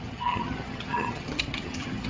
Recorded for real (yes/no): no